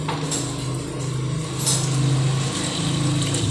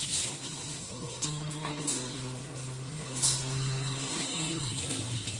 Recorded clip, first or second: first